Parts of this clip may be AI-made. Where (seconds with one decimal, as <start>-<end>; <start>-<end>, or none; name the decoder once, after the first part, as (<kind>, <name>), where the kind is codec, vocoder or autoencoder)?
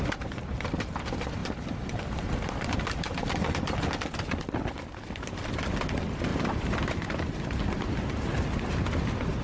1.4-2.3 (vocoder, BigVGAN v2); 6.3-7.6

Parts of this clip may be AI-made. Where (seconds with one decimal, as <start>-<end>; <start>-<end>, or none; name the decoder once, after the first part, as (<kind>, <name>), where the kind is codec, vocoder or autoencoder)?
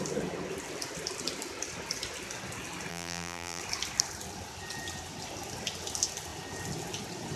2.9-3.6 (vocoder, BigVGAN v2)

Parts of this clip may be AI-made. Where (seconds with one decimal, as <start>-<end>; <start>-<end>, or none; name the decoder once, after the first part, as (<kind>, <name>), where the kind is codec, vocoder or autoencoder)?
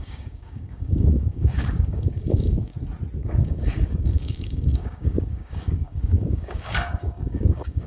0.0-2.7 (codec, DAC); 3.2-7.9